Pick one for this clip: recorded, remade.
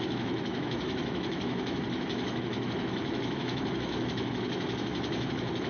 remade